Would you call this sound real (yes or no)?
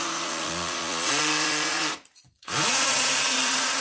no